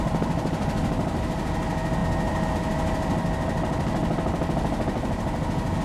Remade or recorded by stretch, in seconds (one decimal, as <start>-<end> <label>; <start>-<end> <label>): 0.0-5.8 recorded